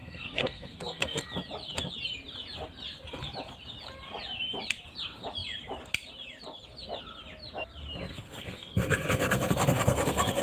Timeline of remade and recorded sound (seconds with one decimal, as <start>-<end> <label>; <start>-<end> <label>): 0.0-1.2 remade; 1.2-8.1 recorded; 8.1-10.4 remade